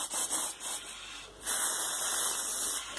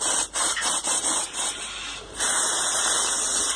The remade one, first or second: second